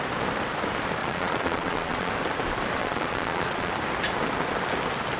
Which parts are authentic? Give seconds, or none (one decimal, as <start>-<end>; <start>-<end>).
0.0-1.0; 2.1-2.8; 3.7-5.2